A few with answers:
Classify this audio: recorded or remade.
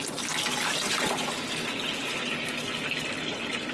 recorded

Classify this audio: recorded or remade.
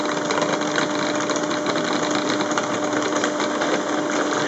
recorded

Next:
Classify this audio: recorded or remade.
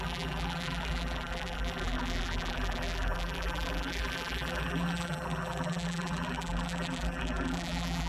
remade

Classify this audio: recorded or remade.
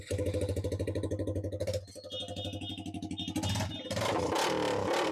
recorded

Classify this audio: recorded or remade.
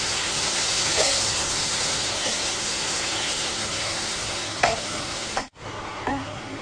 remade